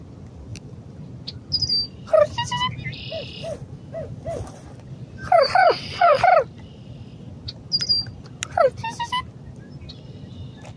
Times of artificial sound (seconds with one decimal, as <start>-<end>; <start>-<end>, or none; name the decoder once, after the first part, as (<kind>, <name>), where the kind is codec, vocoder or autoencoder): 5.6-6.2 (vocoder, WaveNeXt)